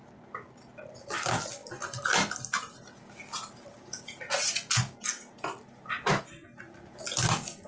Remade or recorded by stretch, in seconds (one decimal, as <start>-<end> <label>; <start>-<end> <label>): 0.0-7.7 recorded